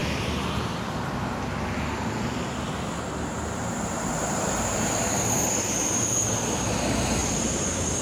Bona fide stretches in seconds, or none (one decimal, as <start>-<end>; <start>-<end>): 0.0-4.1